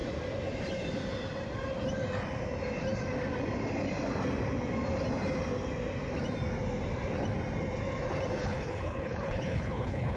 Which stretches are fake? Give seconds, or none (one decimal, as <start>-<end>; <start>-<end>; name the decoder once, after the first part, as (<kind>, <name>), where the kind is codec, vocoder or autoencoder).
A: 8.4-10.2 (codec, HILCodec)